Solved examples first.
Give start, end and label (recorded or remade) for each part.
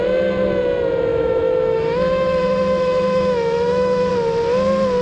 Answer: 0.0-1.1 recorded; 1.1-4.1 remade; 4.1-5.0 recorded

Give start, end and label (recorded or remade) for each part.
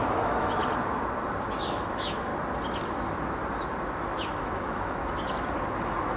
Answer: 0.0-0.6 remade; 0.6-1.6 recorded; 1.6-2.3 remade; 2.3-4.2 recorded; 4.2-5.0 remade; 5.0-5.8 recorded; 5.8-6.2 remade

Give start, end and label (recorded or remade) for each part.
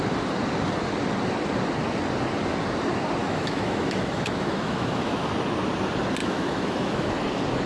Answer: 0.0-3.2 recorded; 3.2-5.3 remade; 5.3-6.2 recorded; 6.2-7.1 remade; 7.1-7.7 recorded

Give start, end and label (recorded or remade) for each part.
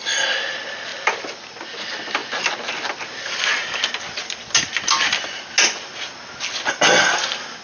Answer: 0.0-7.6 recorded